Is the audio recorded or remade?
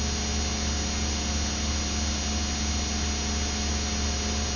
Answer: recorded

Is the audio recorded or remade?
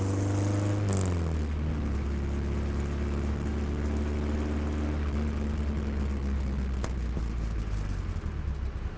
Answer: recorded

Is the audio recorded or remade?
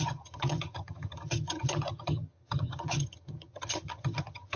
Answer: remade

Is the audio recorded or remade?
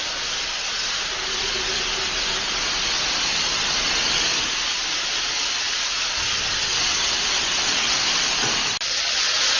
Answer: recorded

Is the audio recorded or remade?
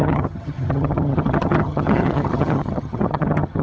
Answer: remade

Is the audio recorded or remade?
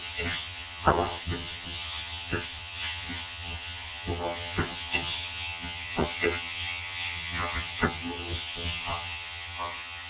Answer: remade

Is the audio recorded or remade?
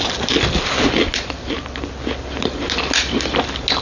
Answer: recorded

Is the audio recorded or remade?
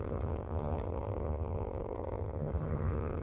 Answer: remade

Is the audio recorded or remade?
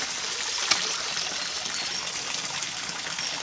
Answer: recorded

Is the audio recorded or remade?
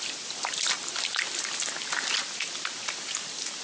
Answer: recorded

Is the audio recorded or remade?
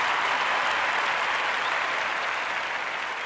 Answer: recorded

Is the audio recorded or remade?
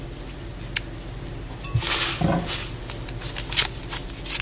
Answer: recorded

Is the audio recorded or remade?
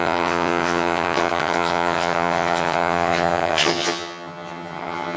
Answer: remade